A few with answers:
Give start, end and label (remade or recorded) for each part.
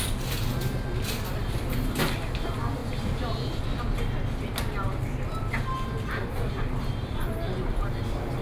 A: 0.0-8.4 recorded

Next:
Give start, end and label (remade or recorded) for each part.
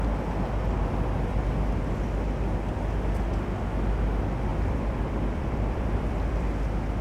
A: 0.0-4.5 recorded; 4.5-7.0 remade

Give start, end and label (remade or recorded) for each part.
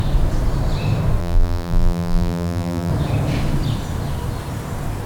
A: 0.0-1.2 recorded; 1.2-2.9 remade; 2.9-5.1 recorded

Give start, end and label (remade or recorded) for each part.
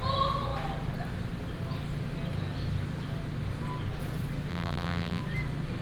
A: 0.0-4.5 recorded; 4.5-5.2 remade; 5.2-5.8 recorded